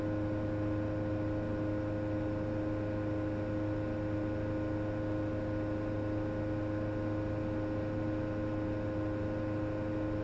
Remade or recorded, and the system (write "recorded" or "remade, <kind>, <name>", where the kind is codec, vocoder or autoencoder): recorded